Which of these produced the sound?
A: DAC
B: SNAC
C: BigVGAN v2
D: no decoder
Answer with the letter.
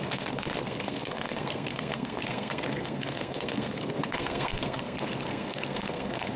B